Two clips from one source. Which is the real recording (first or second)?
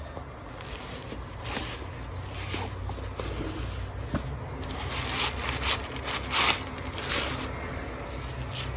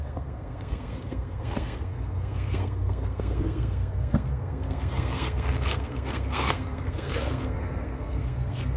first